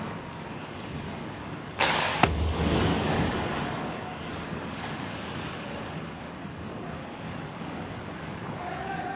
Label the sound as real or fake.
fake